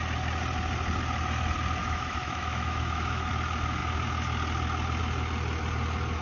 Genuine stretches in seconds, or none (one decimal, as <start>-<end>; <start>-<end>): 0.0-1.8; 3.3-6.2

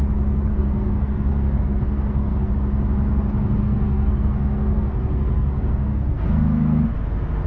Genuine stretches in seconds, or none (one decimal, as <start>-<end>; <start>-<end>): 0.0-0.5; 2.5-3.6; 6.8-7.5

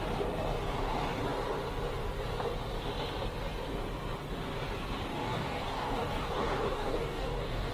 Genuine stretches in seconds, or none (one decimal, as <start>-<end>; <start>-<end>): 0.0-5.1

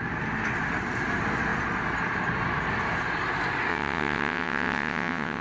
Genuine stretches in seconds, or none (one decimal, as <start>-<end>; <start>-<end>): 0.0-3.7

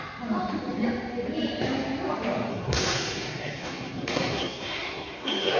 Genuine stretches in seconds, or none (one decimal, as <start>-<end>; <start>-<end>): 0.0-2.5